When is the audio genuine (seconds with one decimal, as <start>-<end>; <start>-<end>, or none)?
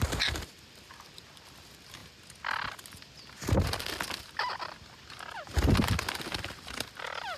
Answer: 0.0-7.4